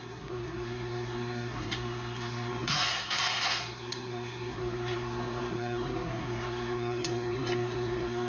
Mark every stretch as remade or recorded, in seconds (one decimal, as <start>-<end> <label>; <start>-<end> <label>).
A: 0.0-8.3 remade